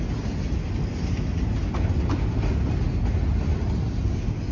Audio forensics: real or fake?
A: real